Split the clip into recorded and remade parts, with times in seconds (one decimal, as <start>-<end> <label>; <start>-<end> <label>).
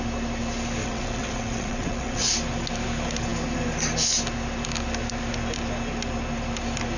0.0-0.8 recorded; 0.8-2.3 remade; 2.3-7.0 recorded